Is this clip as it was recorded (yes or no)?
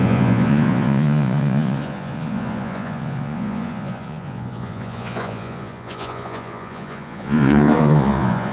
no